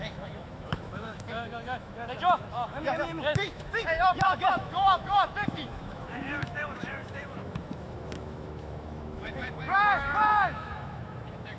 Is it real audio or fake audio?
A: fake